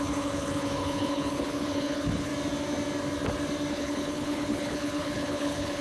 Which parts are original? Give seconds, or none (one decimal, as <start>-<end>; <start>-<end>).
2.3-3.7